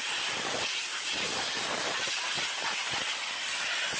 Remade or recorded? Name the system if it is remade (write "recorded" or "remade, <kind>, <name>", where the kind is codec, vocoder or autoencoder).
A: recorded